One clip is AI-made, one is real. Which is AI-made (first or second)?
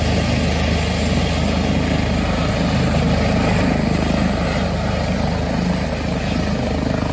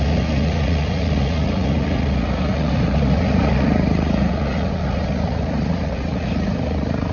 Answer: second